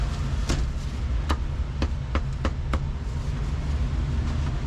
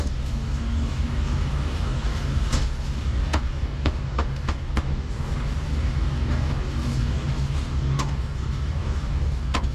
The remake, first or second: second